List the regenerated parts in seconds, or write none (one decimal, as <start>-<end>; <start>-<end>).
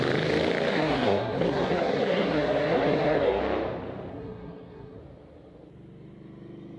0.7-3.4; 4.1-5.0